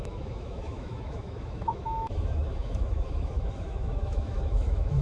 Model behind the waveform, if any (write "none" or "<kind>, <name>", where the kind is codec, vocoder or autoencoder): autoencoder, DAC-VAE